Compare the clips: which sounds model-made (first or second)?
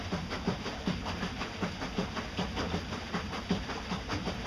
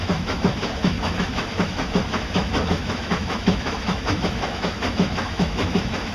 second